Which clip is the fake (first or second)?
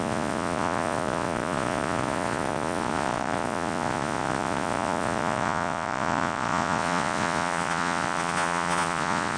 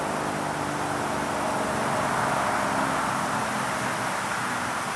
first